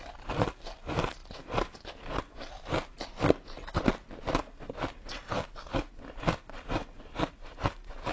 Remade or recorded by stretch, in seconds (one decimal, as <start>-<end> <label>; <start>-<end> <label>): 0.0-8.1 recorded